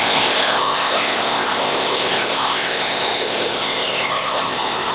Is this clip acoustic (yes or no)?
no